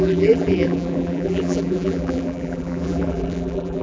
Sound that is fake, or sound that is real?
fake